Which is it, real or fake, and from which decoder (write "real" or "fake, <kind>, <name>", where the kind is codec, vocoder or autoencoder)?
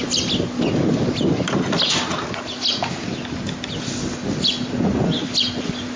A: real